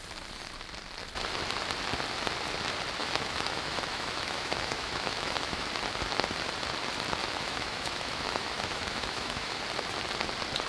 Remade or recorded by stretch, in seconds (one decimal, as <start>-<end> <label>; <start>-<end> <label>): 0.0-3.0 recorded; 3.0-5.7 remade; 5.7-7.2 recorded; 7.2-9.6 remade; 9.6-10.7 recorded